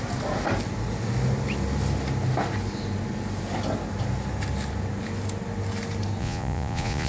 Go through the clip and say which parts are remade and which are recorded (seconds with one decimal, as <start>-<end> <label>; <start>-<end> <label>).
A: 0.0-6.2 recorded; 6.2-7.1 remade